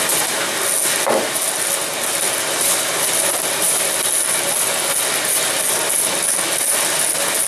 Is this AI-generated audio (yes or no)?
no